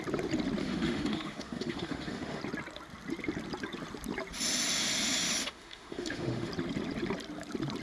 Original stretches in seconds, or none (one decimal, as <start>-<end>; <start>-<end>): 0.0-0.6; 2.4-5.4; 6.5-7.8